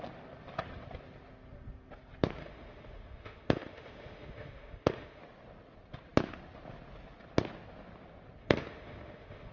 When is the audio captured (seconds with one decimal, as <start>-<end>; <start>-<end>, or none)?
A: 0.0-2.4; 5.2-8.4